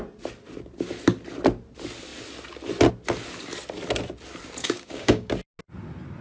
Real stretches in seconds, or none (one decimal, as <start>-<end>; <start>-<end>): 0.0-4.6; 5.3-6.2